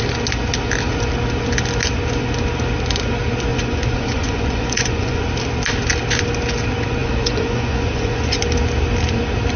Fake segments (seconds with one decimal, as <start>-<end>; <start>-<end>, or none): 3.5-5.2; 7.0-8.4